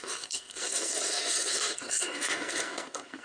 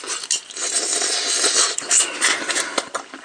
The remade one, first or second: first